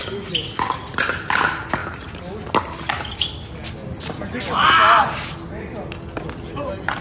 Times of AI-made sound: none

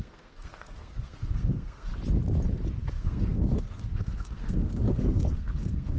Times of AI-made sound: 0.0-1.9 (codec, SNAC); 2.9-6.0

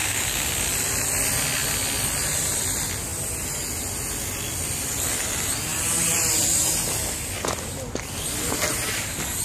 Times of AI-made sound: 0.0-0.5 (codec, DAC)

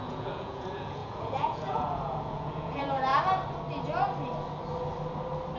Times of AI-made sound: 0.0-3.1 (vocoder, Vocos)

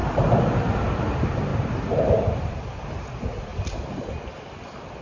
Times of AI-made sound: 0.9-3.5 (vocoder, BigVGAN v2)

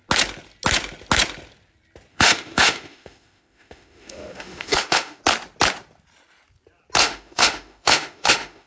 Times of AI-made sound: 2.1-5.2 (autoencoder, DAC-VAE); 7.0-8.7